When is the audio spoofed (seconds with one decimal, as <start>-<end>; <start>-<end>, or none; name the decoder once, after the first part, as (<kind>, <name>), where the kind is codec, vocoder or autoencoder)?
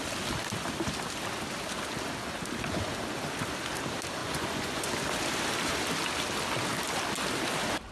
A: 4.2-4.8 (vocoder, Vocos)